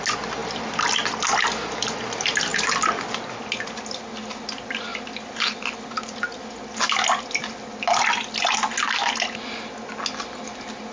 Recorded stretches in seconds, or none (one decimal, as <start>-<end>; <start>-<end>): 0.0-10.9